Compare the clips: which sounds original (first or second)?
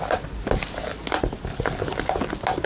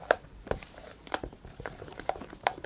first